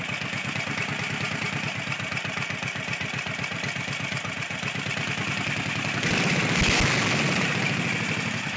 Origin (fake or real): real